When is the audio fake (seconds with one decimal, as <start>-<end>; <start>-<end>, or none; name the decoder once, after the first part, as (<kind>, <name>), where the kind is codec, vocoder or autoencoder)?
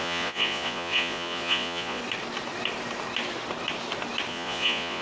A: 0.0-2.0 (vocoder, Vocos); 4.3-5.0